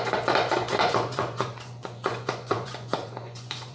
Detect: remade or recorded remade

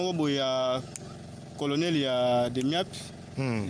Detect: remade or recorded recorded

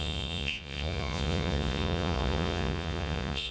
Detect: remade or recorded remade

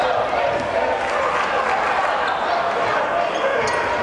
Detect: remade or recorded recorded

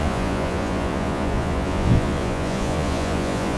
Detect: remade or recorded remade